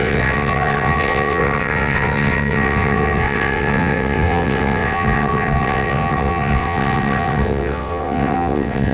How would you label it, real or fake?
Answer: fake